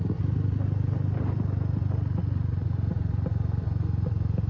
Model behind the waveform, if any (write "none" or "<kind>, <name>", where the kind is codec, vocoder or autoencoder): none